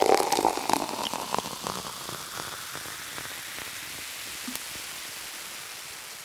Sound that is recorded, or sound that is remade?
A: recorded